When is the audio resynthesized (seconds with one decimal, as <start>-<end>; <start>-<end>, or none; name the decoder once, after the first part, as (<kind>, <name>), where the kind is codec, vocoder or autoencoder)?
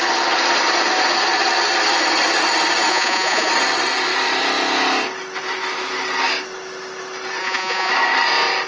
2.9-3.5 (vocoder, Vocos); 7.4-7.9